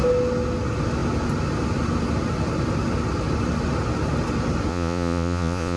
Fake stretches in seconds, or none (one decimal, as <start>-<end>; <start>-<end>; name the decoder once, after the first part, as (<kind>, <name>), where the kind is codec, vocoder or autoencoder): 4.7-5.8 (vocoder, Vocos)